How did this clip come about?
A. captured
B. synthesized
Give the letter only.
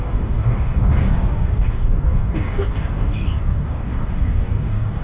B